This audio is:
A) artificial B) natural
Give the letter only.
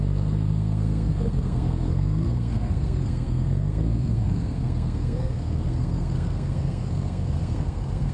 A